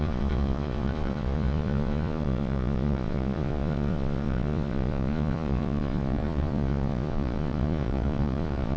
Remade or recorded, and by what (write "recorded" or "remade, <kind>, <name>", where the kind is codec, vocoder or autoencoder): remade, vocoder, Vocos